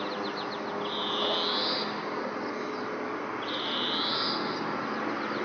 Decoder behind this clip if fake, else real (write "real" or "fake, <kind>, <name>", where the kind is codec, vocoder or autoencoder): real